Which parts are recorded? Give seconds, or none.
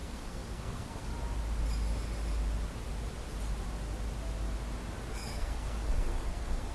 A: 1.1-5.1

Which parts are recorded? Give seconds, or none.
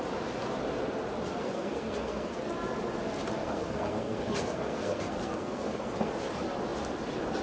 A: 0.0-1.3; 2.4-3.4; 6.1-7.4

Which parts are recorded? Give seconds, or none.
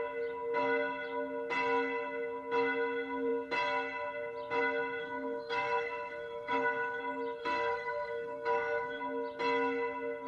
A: 0.0-5.0; 7.0-7.4; 9.0-10.3